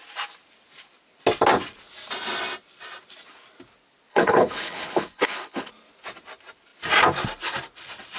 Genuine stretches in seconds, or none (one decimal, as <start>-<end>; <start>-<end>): 0.0-4.1; 5.7-8.2